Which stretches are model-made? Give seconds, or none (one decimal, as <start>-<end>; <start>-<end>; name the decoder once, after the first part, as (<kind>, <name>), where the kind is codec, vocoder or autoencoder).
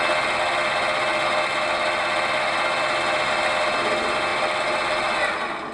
none